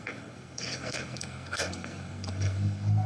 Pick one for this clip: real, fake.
fake